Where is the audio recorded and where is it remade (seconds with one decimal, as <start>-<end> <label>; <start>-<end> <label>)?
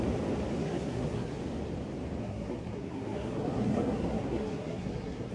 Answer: 0.0-0.6 recorded; 0.6-1.4 remade; 1.4-2.2 recorded; 2.2-5.3 remade